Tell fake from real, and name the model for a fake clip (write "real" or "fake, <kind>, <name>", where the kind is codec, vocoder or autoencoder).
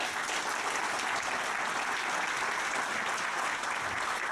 real